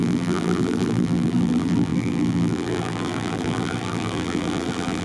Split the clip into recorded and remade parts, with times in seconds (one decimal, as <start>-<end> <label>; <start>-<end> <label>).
0.0-5.0 remade